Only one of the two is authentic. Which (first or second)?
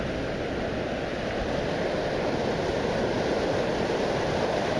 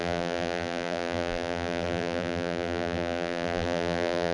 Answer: first